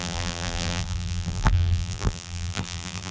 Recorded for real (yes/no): no